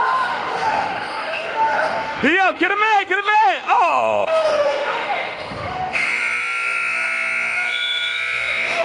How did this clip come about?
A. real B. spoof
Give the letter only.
B